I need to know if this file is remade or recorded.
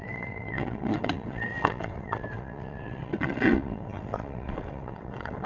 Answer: remade